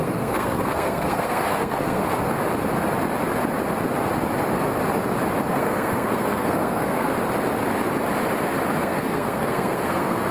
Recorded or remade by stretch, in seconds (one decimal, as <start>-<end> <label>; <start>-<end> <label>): 0.0-2.0 remade; 2.0-5.5 recorded; 5.5-7.1 remade; 7.1-8.8 recorded; 8.8-10.3 remade